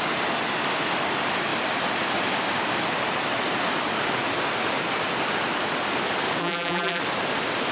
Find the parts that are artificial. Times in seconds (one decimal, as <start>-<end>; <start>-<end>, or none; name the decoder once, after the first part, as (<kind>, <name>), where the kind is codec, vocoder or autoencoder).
6.4-7.0 (vocoder, BigVGAN v2)